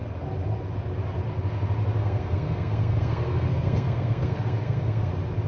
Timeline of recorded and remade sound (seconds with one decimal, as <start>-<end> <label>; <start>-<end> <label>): 0.0-2.0 recorded; 2.0-5.1 remade; 5.1-5.5 recorded